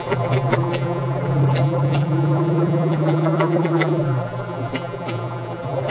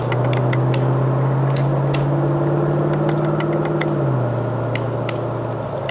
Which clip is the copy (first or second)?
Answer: first